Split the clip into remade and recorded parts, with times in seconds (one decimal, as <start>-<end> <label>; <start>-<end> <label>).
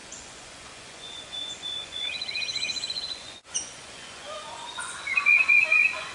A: 0.0-6.1 remade